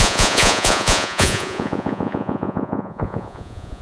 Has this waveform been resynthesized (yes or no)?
yes